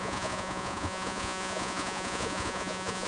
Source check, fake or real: fake